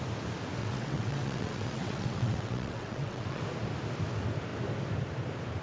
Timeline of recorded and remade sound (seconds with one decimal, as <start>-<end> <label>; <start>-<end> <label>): 0.0-0.6 recorded; 0.6-3.4 remade; 3.4-5.6 recorded